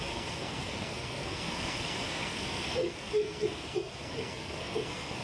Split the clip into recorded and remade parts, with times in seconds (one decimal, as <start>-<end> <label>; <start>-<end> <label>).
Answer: 0.0-5.2 remade

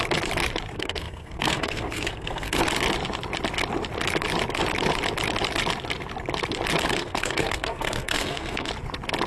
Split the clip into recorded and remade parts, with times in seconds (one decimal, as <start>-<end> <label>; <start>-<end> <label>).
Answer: 0.0-0.7 recorded; 0.7-2.6 remade; 2.6-6.9 recorded; 6.9-8.7 remade; 8.7-9.3 recorded